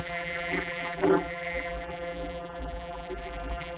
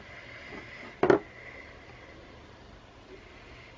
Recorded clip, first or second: second